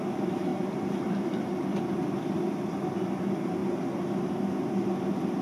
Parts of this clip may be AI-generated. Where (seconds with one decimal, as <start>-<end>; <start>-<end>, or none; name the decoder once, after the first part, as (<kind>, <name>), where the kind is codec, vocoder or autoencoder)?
0.5-2.7 (vocoder, BigVGAN v2)